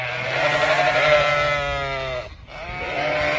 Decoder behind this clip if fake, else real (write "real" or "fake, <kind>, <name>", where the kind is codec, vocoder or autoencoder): real